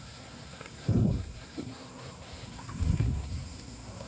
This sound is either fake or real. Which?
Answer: fake